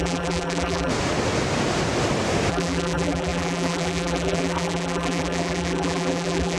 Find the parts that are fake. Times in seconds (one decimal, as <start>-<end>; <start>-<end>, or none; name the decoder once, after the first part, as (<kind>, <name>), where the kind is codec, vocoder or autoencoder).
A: 0.0-0.9 (vocoder, BigVGAN v2); 2.5-6.6